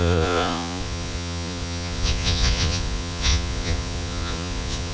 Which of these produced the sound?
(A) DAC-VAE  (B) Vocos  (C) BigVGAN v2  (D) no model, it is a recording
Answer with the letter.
B